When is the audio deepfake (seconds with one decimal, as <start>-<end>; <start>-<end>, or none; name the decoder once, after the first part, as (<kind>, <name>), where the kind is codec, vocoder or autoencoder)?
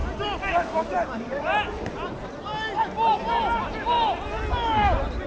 0.0-1.7 (vocoder, BigVGAN v2)